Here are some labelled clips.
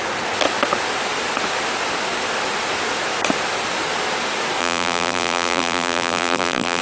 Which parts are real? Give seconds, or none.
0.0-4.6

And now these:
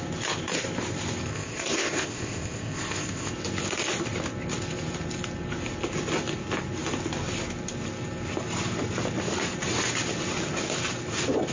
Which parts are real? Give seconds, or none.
0.0-1.3; 3.3-11.5

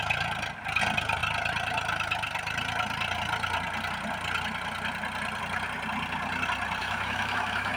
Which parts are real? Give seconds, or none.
0.0-6.8

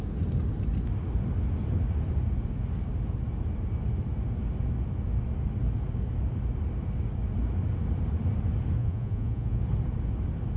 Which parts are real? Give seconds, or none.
0.0-8.8; 9.6-10.6

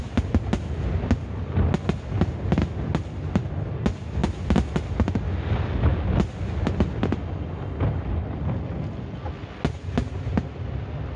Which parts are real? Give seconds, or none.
0.0-11.2